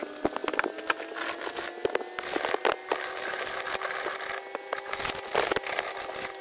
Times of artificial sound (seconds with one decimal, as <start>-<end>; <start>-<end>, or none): none